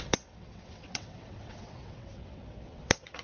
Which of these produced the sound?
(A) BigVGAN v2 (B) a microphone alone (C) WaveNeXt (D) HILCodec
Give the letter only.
C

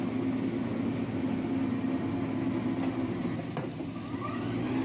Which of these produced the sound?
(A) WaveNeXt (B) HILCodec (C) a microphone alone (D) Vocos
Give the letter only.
C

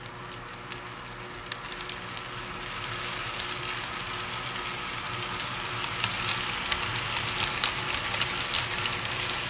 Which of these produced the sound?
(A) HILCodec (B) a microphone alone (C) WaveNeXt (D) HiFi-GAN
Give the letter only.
B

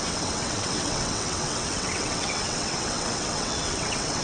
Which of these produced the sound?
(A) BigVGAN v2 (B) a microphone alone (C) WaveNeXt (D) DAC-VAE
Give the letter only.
C